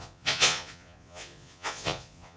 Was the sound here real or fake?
fake